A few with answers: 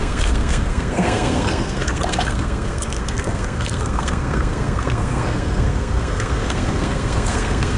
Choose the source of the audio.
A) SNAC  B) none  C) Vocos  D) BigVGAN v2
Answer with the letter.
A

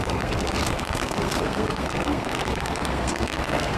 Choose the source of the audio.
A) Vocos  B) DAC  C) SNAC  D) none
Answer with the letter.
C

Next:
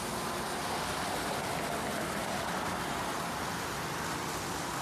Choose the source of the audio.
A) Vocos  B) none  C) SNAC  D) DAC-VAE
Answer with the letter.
B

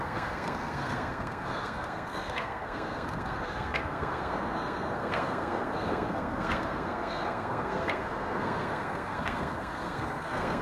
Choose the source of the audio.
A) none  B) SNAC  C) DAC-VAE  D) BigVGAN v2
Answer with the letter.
B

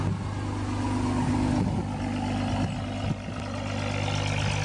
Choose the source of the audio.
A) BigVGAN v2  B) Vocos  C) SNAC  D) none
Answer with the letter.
D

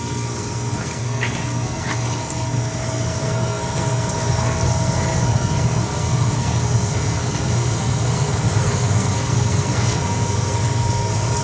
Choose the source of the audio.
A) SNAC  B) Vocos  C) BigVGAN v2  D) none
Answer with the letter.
A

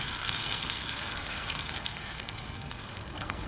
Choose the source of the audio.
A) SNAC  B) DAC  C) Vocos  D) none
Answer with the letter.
A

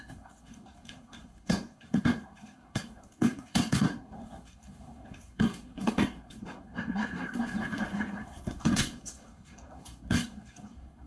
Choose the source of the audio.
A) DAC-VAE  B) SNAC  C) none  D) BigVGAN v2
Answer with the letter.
B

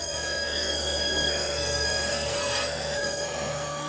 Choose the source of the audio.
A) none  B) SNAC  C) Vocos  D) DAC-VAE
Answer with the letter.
B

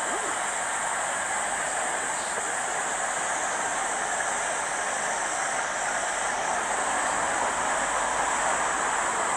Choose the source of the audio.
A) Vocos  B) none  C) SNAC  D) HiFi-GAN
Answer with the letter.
B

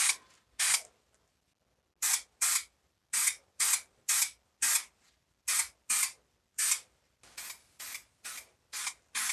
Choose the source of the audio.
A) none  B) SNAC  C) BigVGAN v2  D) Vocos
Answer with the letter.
A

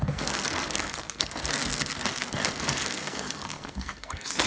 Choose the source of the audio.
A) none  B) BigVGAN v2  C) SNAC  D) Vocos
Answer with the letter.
C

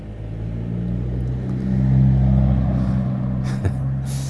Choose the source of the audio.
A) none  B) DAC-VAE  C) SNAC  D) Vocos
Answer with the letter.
A